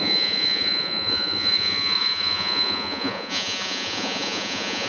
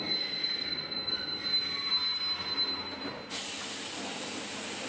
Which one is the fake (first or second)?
first